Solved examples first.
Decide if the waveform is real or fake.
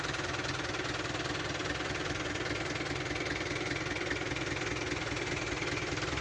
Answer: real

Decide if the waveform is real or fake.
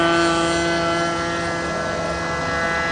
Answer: real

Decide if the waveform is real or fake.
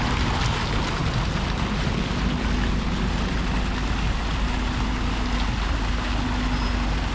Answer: real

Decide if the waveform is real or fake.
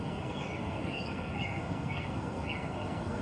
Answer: fake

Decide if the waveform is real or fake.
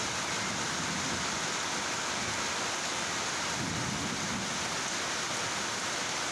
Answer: real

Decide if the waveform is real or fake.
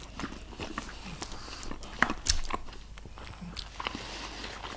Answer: real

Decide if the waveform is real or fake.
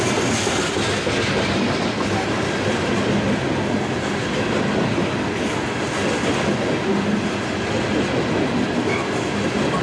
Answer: real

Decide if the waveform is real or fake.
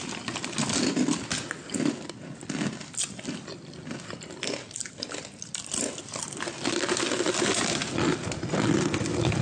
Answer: real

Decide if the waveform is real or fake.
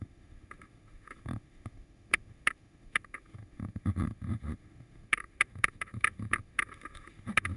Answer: fake